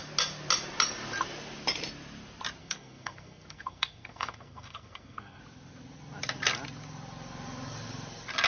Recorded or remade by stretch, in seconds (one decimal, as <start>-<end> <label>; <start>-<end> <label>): 0.0-2.6 recorded; 2.6-5.4 remade; 5.4-8.5 recorded